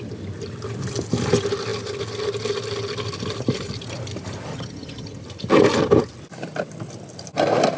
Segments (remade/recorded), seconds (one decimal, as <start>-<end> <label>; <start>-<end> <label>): 0.0-4.5 recorded; 4.5-5.2 remade; 5.2-7.8 recorded